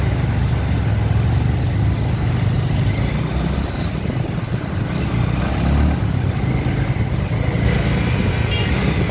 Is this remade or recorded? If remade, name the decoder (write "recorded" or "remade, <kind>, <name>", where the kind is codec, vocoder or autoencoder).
recorded